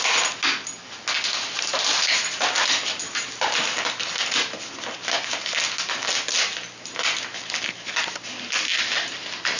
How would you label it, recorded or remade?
recorded